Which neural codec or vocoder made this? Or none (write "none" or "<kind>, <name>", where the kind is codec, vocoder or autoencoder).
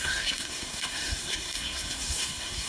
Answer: codec, SNAC